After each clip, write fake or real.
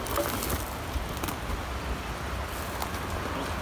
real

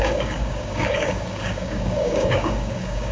fake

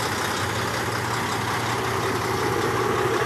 real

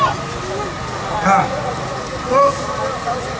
real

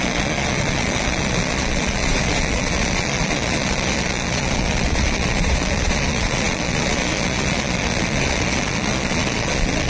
fake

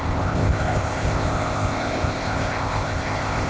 fake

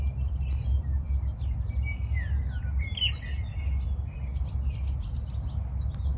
real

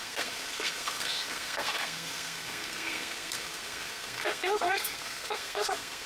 fake